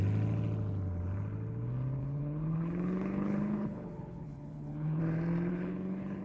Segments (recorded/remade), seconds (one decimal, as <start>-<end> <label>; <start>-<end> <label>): 0.0-2.0 recorded; 2.0-5.0 remade; 5.0-5.5 recorded; 5.5-6.2 remade